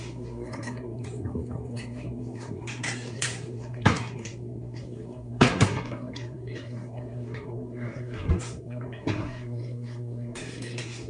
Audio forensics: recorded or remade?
remade